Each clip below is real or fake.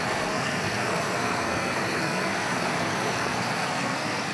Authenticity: fake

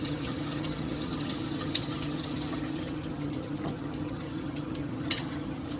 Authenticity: fake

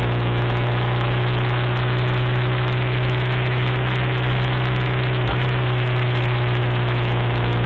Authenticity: fake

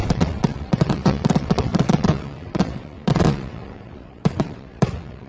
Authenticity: fake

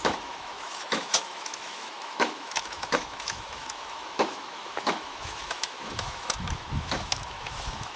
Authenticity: fake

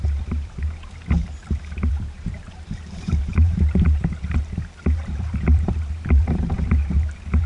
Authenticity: fake